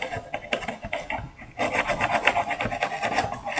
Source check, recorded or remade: recorded